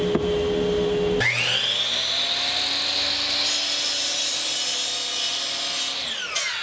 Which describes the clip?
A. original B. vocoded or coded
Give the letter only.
A